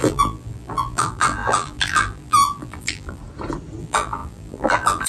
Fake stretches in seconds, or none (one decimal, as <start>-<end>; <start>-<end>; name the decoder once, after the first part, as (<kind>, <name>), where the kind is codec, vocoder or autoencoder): 0.0-3.2 (vocoder, BigVGAN v2); 3.8-5.1